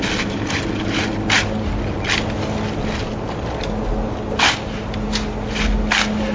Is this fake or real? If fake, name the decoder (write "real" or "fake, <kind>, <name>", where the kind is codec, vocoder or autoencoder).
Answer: real